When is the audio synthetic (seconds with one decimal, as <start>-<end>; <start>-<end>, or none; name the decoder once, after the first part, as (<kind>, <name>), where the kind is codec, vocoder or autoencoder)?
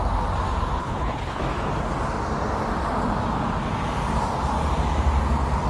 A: 0.8-1.4 (codec, HILCodec)